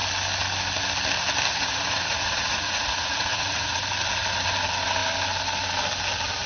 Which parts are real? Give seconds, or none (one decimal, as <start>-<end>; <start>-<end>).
0.0-1.5; 3.8-6.5